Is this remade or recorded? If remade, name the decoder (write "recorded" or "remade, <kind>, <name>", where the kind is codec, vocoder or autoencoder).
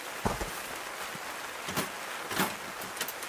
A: recorded